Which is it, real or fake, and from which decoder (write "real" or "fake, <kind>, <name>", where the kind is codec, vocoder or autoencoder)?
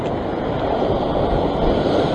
real